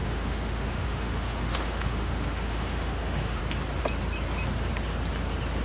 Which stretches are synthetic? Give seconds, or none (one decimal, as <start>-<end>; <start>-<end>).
0.0-3.4